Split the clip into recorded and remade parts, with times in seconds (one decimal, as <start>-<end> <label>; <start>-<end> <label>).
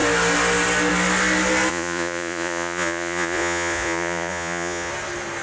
0.0-1.7 recorded; 1.7-4.9 remade; 4.9-5.4 recorded